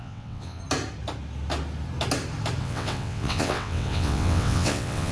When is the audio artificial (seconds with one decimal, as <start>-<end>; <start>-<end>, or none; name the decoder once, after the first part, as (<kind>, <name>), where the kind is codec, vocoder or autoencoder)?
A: 0.0-0.6 (vocoder, WaveNeXt); 2.6-5.1